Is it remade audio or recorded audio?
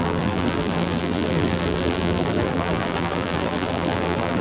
remade